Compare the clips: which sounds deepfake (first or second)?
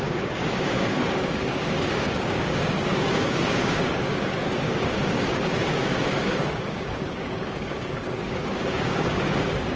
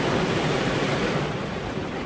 first